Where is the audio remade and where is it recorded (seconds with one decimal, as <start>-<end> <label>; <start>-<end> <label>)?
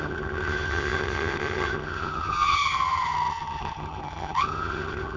0.0-5.2 remade